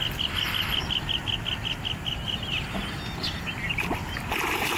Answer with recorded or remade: recorded